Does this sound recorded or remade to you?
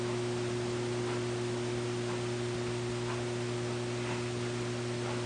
recorded